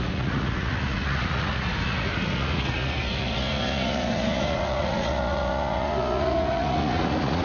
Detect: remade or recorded remade